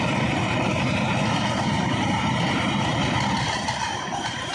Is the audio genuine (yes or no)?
no